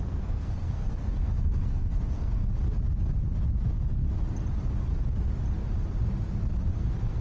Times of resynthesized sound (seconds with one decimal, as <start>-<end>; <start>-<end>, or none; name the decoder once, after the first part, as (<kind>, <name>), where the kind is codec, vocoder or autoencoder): 0.0-2.4 (codec, SNAC); 6.7-7.2